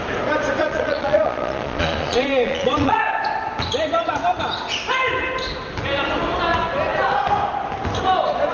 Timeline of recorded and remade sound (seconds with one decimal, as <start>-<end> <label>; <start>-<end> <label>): 0.0-0.6 recorded; 0.6-3.0 remade; 3.0-8.5 recorded